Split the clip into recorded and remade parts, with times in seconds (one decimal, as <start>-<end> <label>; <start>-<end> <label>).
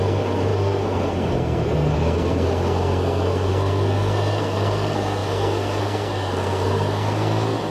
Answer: 0.0-7.7 remade